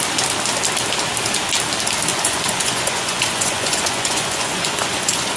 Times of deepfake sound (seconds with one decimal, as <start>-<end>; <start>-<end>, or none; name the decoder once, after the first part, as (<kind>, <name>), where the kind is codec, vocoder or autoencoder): 2.1-5.4 (vocoder, Vocos)